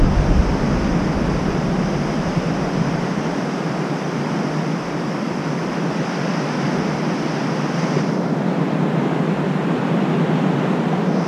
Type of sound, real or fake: fake